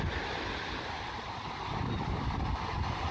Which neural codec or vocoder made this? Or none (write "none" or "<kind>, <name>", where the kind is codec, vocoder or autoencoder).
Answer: none